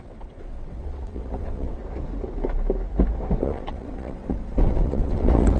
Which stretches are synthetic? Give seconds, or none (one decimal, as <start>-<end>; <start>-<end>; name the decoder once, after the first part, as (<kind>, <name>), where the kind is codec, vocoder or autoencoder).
0.0-1.8 (vocoder, WaveNeXt); 3.4-5.6